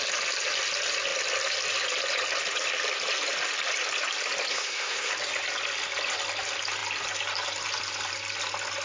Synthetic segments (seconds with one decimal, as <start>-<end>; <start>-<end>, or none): 4.5-5.1